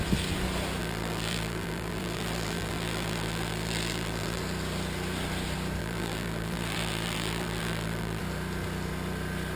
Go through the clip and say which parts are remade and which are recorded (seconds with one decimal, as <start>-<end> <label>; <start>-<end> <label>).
0.0-0.8 recorded; 0.8-4.4 remade; 4.4-5.8 recorded; 5.8-8.2 remade; 8.2-9.6 recorded